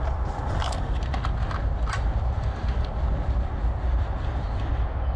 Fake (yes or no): no